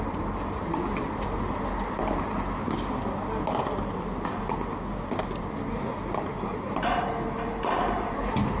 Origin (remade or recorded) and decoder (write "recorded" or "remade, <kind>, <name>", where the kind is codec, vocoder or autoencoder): recorded